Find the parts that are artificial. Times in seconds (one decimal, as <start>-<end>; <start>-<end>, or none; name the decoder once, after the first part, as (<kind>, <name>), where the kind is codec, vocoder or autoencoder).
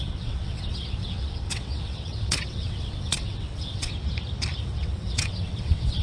0.0-3.9 (vocoder, WaveNeXt); 4.6-6.0